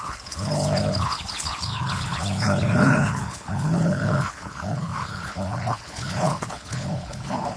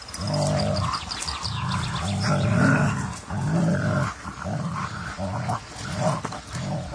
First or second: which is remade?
first